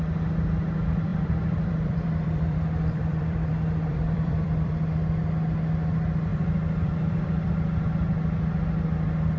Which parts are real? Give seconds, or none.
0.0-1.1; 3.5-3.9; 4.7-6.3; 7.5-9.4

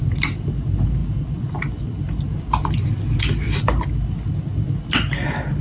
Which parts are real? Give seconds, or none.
0.0-5.6

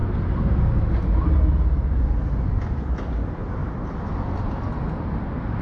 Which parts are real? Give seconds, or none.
0.0-3.6; 4.1-5.6

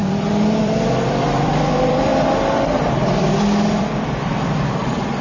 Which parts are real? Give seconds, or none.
2.1-2.9

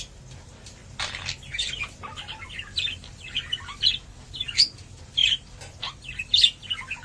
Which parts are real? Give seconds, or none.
0.8-4.6